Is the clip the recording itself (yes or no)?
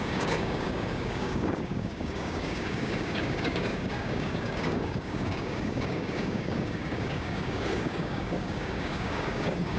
no